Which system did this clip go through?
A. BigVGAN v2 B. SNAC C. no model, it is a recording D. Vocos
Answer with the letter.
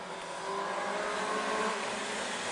C